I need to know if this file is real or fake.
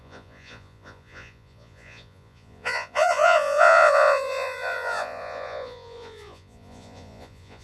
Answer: fake